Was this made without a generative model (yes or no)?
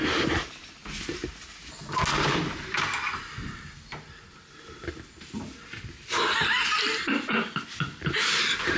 yes